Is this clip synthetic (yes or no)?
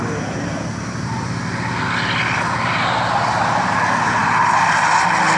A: no